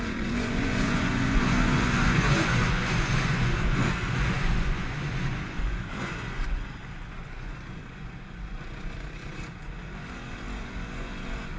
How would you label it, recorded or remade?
remade